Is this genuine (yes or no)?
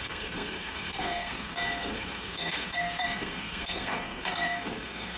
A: no